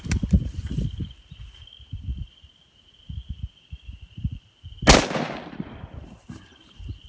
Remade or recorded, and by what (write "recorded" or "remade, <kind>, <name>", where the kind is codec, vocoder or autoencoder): recorded